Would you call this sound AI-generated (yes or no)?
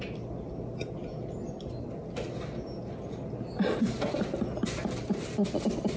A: no